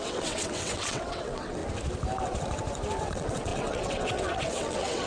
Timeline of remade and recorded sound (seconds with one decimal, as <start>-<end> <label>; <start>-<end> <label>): 0.0-1.6 remade; 1.6-3.0 recorded; 3.0-5.1 remade